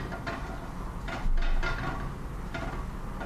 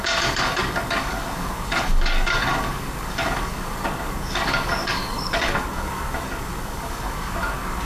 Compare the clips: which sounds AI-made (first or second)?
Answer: second